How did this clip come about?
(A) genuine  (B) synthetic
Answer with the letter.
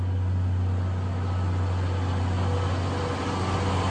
A